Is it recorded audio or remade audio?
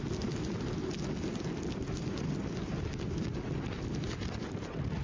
recorded